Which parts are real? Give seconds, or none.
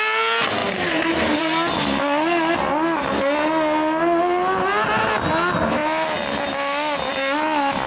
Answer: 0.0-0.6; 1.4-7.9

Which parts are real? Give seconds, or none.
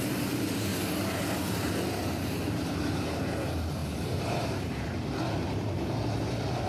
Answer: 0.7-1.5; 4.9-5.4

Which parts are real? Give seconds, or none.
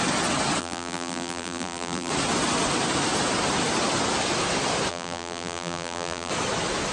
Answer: 0.0-0.6; 2.1-4.9; 6.3-6.9